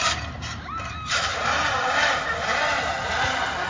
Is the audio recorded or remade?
recorded